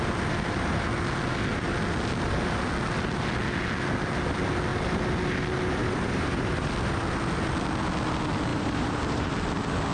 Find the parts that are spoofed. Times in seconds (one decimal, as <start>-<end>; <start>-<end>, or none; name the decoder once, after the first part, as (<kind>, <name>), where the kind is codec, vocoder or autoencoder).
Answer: 5.8-6.7 (vocoder, BigVGAN v2); 8.5-9.3